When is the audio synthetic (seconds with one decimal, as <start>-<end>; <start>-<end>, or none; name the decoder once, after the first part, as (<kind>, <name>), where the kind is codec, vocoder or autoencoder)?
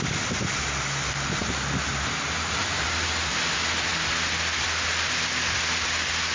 none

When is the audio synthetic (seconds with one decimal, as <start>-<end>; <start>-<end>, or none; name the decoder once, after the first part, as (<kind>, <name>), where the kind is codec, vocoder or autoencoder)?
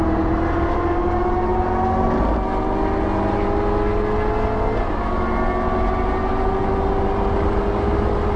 none